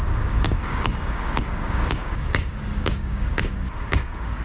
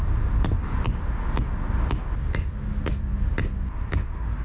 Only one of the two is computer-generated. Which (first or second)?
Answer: first